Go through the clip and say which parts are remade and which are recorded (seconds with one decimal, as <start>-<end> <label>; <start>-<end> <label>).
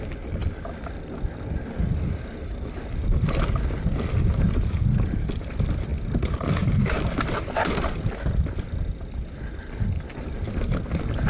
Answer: 0.0-5.9 recorded; 5.9-8.0 remade; 8.0-11.3 recorded